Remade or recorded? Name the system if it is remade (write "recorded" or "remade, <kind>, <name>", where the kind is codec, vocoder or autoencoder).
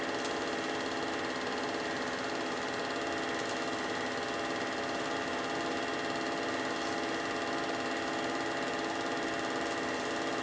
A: recorded